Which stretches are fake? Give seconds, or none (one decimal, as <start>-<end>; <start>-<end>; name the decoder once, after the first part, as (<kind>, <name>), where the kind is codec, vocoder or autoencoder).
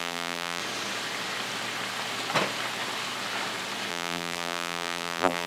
0.0-0.6 (vocoder, BigVGAN v2); 3.9-5.5